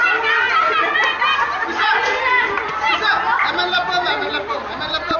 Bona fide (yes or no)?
no